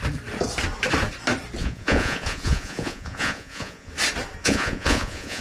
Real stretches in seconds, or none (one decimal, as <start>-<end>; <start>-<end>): 0.0-1.6; 3.9-4.4